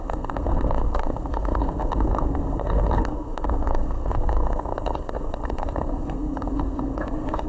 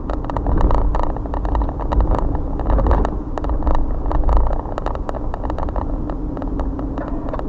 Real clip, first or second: second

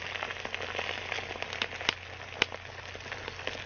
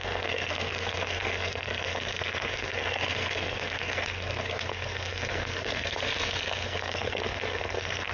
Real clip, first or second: first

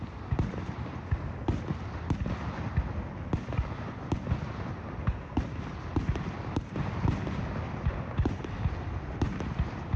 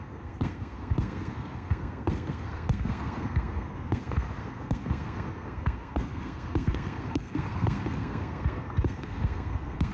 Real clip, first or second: first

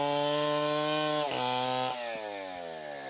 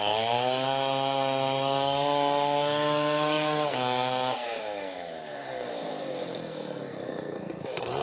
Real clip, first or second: first